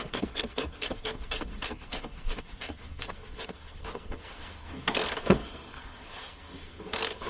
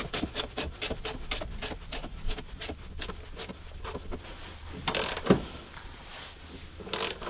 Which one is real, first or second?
second